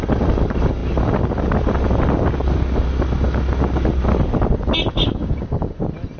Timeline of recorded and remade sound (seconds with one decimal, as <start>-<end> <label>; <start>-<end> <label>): 0.0-4.9 recorded; 4.9-5.8 remade; 5.8-6.2 recorded